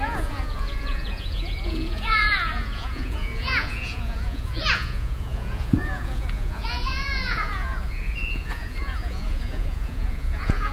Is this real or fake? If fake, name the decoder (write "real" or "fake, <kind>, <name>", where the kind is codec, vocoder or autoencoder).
fake, vocoder, Vocos